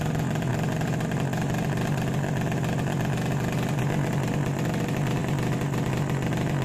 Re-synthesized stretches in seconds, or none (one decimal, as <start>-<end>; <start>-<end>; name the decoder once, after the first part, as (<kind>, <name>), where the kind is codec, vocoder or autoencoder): none